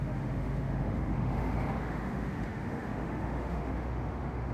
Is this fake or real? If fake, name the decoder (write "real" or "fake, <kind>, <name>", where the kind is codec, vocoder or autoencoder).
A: fake, autoencoder, DAC-VAE